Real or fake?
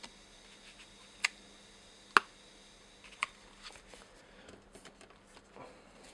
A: real